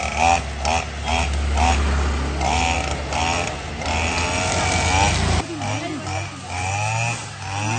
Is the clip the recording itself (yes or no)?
yes